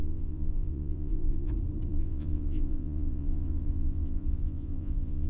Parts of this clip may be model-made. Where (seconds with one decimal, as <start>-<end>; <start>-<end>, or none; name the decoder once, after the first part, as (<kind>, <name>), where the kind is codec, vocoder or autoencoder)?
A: 0.0-1.5 (vocoder, Vocos); 1.9-5.3